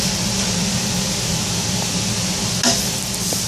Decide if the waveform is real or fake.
real